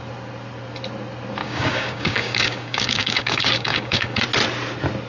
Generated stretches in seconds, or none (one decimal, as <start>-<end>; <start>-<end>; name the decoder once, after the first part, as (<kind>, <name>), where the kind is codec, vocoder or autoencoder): 1.4-4.2 (codec, DAC)